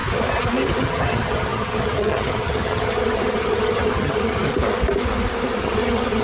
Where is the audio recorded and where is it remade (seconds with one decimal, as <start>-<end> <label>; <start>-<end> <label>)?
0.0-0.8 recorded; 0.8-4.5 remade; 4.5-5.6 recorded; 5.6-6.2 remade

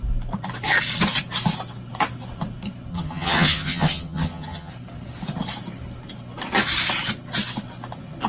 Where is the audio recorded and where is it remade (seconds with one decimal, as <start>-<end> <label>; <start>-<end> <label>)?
0.0-2.9 recorded; 2.9-4.7 remade; 4.7-8.3 recorded

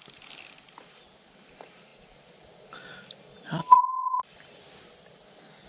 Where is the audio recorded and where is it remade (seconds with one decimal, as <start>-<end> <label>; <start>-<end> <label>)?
0.0-3.6 recorded; 3.6-4.2 remade; 4.2-5.7 recorded

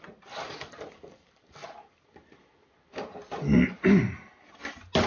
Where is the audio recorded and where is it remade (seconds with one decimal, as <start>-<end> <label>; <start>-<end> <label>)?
0.0-5.1 recorded

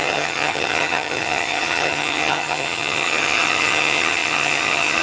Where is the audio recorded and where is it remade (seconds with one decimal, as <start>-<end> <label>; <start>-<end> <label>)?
0.0-5.0 remade

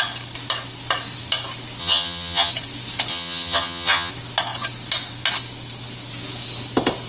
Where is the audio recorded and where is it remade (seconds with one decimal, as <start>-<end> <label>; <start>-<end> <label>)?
0.0-1.8 recorded; 1.8-2.5 remade; 2.5-3.1 recorded; 3.1-4.1 remade; 4.1-7.1 recorded